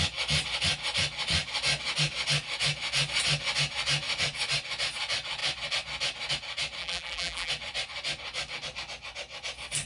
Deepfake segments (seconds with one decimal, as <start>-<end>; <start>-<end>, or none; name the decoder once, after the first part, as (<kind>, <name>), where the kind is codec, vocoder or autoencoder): 6.8-7.5 (vocoder, BigVGAN v2)